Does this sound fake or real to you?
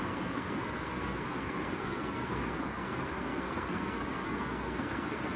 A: fake